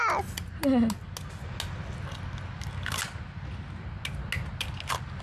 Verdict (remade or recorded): recorded